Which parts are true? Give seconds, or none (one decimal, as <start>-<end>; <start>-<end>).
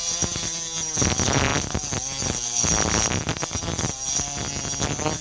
0.0-5.2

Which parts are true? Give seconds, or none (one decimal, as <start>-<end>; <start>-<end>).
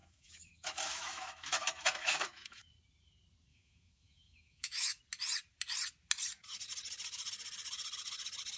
2.7-3.5; 5.0-8.6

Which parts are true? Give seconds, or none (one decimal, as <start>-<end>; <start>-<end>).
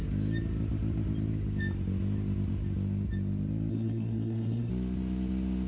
0.0-3.7; 4.7-5.7